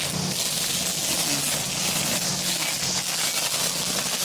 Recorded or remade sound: recorded